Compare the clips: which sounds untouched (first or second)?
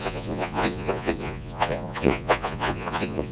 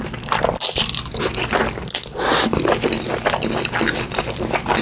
second